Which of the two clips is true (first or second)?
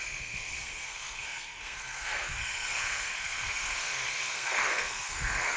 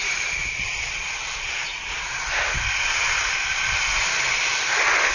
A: second